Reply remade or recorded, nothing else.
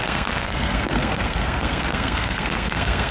remade